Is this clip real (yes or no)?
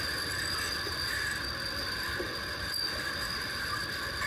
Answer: yes